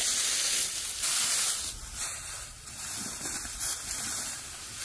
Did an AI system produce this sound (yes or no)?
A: no